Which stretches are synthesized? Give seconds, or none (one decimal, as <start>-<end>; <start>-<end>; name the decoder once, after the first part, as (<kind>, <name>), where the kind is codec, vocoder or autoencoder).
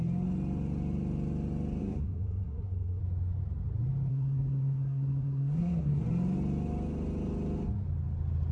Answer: 1.8-3.0 (codec, SNAC); 4.1-6.0